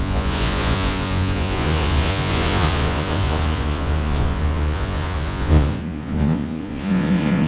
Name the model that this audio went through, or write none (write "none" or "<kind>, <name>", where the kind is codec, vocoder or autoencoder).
vocoder, Vocos